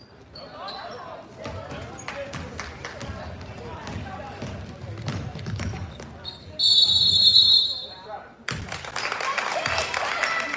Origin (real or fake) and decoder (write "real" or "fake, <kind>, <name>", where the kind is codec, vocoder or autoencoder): real